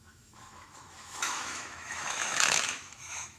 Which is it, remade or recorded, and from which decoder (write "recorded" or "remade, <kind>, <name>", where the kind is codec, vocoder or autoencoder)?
remade, autoencoder, DAC-VAE